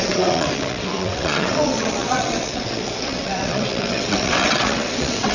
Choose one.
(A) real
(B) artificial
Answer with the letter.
B